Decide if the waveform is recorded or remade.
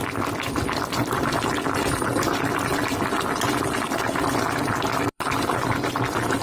remade